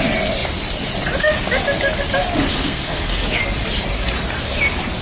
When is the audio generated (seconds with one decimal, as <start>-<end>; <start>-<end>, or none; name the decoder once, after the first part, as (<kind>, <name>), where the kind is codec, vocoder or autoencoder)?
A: 2.5-3.4 (codec, SNAC)

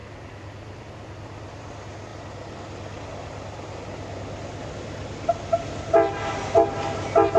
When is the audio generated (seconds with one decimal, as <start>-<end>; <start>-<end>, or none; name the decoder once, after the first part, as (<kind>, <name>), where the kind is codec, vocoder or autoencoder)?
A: none

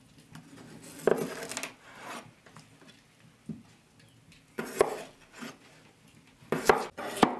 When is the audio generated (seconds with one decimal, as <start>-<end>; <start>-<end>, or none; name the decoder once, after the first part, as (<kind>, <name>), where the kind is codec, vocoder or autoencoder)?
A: none

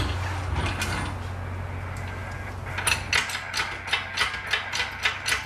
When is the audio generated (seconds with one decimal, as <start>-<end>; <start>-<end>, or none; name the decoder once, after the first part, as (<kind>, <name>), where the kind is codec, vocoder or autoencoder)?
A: none

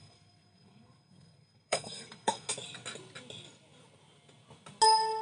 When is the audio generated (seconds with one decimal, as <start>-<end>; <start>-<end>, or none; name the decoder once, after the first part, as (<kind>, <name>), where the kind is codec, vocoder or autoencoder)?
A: 0.0-2.5 (codec, SNAC)

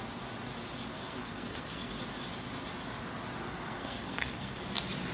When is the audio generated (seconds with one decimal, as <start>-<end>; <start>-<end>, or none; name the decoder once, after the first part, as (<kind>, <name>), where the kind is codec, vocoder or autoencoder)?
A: 0.9-1.9 (codec, SNAC); 3.4-4.6

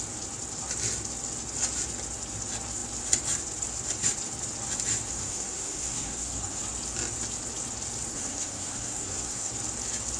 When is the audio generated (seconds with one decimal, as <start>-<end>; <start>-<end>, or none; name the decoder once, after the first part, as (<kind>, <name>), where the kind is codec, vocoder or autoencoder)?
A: 5.1-6.6 (codec, SNAC); 8.1-9.5

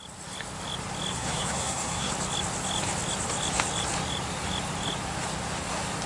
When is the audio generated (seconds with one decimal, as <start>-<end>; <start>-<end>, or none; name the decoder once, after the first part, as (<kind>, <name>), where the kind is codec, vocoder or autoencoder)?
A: 1.1-2.1 (codec, SNAC)